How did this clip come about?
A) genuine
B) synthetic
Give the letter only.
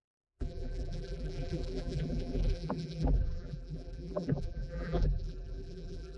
B